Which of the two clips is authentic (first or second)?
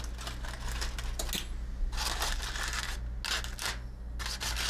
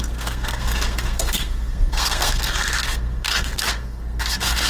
first